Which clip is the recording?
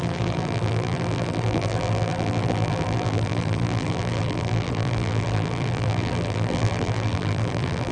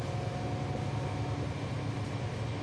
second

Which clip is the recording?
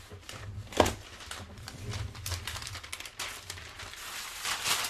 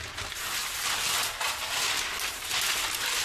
second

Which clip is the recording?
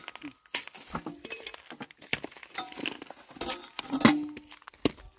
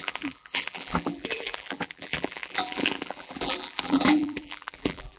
first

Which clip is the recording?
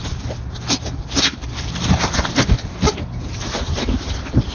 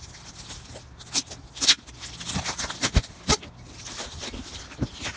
second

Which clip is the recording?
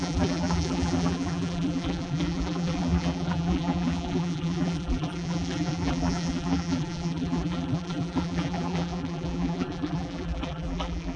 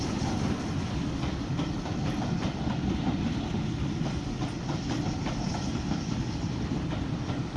second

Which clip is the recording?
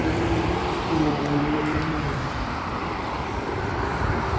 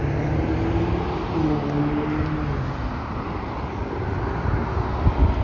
second